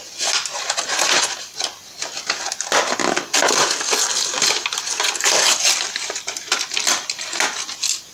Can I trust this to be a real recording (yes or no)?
yes